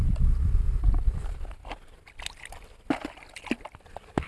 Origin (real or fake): real